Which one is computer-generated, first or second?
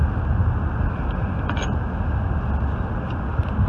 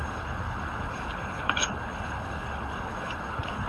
second